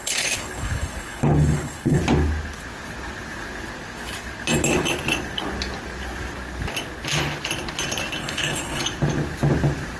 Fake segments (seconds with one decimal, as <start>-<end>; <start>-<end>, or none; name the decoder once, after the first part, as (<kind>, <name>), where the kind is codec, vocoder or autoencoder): 0.0-2.0 (codec, HILCodec); 8.2-8.8